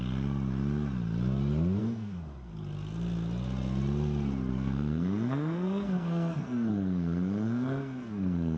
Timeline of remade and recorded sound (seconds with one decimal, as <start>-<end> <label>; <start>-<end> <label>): 0.0-1.8 recorded; 1.8-2.5 remade; 2.5-4.5 recorded; 4.5-8.6 remade